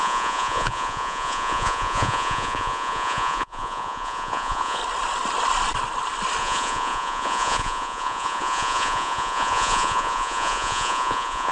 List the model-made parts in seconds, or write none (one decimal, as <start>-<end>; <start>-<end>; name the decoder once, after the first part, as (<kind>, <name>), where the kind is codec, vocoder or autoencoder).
0.0-4.8 (vocoder, Vocos); 6.4-11.5